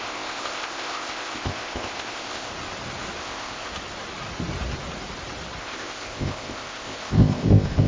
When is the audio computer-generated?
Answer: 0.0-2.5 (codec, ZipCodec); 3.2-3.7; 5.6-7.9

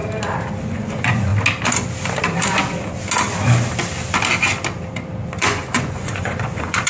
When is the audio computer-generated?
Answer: 0.6-1.3 (vocoder, Vocos); 5.4-6.9

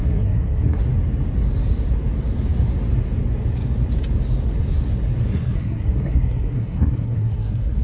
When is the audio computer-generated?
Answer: 0.0-0.8 (codec, SNAC); 5.2-7.8

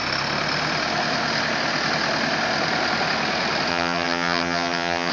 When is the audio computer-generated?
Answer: 3.7-5.1 (vocoder, HiFi-GAN)

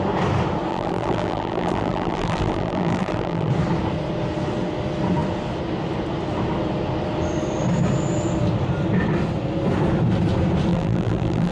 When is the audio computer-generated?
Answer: 0.7-3.5 (vocoder, BigVGAN v2); 10.7-11.5

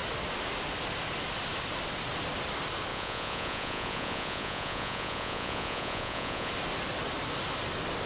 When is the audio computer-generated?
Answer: 2.9-6.5 (vocoder, Vocos)